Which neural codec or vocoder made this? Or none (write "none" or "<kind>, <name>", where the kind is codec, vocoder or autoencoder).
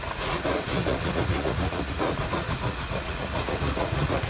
vocoder, Vocos